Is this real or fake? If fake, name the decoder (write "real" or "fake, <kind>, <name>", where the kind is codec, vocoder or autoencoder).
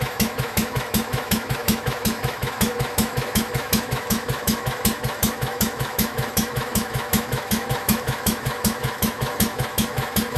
fake, autoencoder, DAC-VAE